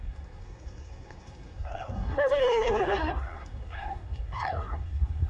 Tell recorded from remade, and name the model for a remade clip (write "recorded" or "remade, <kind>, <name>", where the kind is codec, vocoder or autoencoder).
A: remade, codec, SNAC